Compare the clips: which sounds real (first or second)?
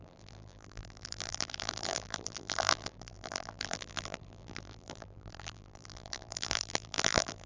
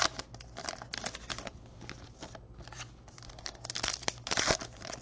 second